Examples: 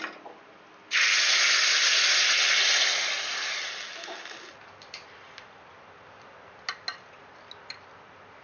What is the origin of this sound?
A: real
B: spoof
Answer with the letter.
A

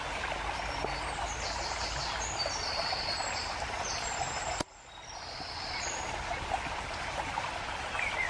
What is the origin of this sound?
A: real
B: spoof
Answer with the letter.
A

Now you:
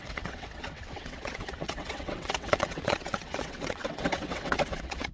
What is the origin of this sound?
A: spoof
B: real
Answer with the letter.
A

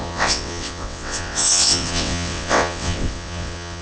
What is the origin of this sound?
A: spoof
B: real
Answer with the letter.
A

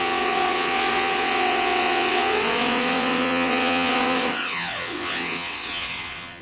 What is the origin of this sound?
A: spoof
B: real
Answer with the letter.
A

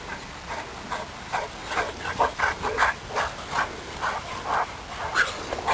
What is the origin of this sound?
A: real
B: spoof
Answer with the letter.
A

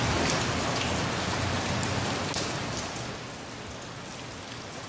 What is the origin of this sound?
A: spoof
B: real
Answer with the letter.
B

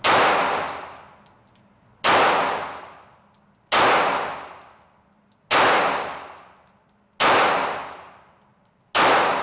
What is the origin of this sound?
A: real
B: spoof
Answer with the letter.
A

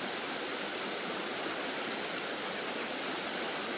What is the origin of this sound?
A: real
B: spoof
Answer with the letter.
A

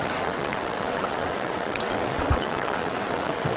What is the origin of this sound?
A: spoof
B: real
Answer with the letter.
A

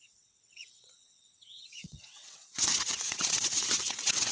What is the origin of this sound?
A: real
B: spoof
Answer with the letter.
B